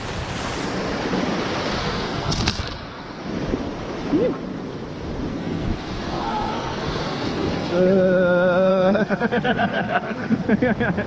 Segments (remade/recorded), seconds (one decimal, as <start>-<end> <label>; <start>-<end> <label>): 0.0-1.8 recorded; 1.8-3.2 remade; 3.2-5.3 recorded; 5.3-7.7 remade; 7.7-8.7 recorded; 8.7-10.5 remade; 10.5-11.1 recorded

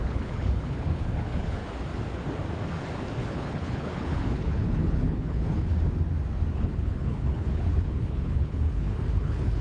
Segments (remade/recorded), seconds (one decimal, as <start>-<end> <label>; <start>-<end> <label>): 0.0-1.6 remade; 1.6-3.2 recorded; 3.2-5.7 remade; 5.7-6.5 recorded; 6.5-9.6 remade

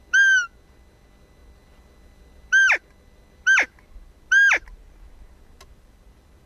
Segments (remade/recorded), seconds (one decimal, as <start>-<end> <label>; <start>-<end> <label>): 0.0-6.5 recorded

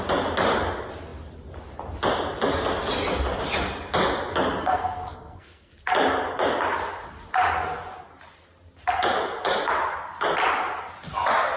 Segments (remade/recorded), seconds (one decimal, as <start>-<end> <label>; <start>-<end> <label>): 0.0-4.6 recorded; 4.6-5.7 remade; 5.7-11.6 recorded

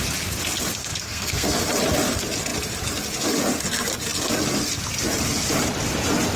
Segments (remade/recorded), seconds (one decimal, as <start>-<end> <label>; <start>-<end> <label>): 0.0-0.8 recorded; 0.8-1.6 remade; 1.6-6.4 recorded

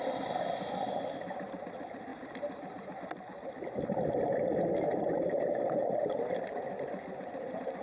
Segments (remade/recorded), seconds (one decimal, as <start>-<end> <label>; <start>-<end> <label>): 0.0-7.8 recorded

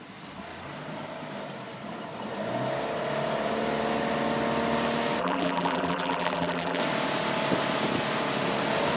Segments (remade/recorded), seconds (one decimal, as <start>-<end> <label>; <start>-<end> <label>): 0.0-5.2 recorded; 5.2-6.8 remade; 6.8-9.0 recorded